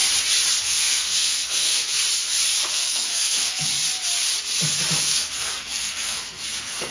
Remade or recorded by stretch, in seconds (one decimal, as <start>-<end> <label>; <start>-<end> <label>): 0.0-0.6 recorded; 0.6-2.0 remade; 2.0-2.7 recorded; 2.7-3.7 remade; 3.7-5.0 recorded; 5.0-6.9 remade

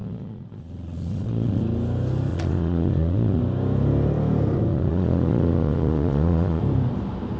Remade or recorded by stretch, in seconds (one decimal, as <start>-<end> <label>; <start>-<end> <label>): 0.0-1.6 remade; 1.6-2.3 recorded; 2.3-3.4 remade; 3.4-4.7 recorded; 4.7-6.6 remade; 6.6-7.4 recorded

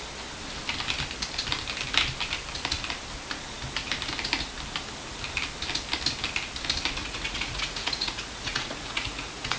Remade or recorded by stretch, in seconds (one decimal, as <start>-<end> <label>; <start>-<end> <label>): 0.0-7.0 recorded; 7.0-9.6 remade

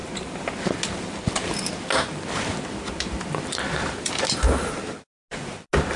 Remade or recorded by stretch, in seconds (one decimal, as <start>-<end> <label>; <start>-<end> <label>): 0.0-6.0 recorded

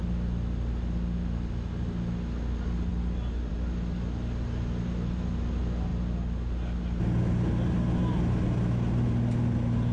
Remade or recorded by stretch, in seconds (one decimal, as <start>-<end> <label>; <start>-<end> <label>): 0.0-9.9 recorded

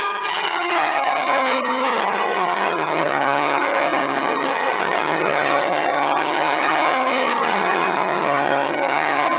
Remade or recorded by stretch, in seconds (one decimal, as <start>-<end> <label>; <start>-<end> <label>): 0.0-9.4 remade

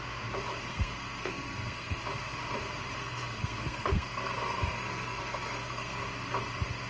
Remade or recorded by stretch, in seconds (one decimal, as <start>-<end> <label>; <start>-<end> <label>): 0.0-0.7 recorded; 0.7-2.0 remade; 2.0-3.0 recorded; 3.0-6.0 remade; 6.0-6.9 recorded

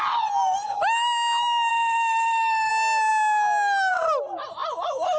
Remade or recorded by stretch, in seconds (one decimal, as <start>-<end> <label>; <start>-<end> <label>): 0.0-1.7 recorded; 1.7-2.7 remade; 2.7-5.2 recorded